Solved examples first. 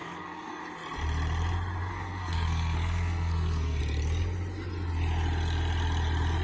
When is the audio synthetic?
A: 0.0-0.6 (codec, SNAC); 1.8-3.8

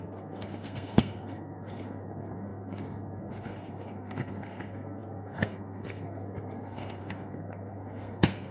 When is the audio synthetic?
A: 0.0-8.5 (codec, SNAC)

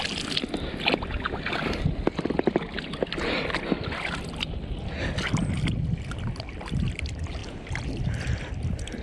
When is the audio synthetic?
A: none